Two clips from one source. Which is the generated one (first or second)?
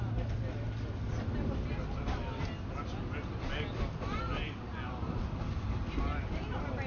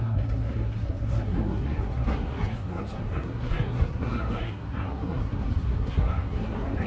second